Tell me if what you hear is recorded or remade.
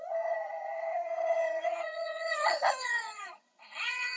remade